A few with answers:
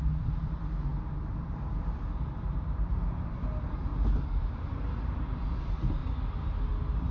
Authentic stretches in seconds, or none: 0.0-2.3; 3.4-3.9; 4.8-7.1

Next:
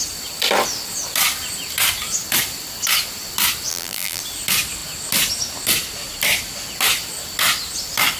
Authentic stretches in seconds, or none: 0.0-3.7; 4.2-8.2

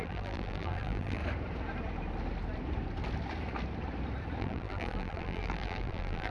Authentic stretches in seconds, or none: 1.2-4.4

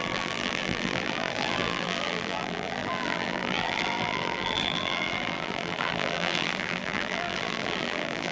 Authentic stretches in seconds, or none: none